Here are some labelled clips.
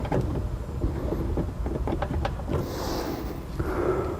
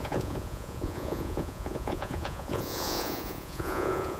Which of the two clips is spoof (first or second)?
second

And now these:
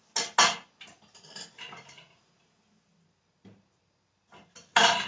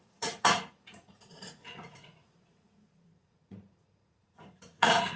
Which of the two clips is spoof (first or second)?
second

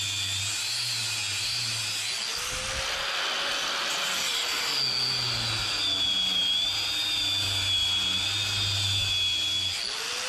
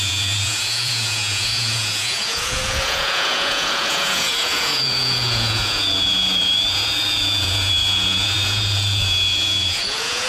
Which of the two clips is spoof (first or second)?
second